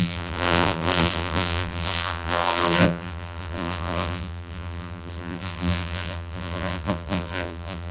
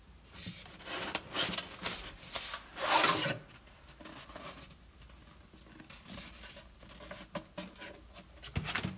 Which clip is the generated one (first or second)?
first